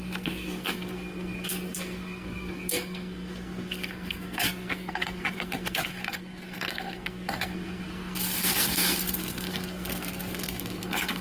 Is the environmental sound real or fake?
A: fake